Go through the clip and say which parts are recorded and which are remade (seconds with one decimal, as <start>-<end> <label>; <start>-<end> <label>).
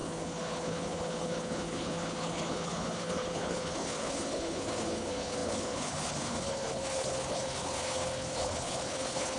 0.0-9.4 remade